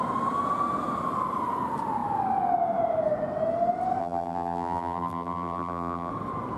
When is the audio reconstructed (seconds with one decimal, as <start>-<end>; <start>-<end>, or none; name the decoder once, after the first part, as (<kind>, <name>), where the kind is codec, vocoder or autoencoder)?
4.0-6.1 (vocoder, BigVGAN v2)